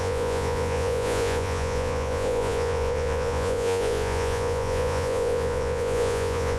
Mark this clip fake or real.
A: fake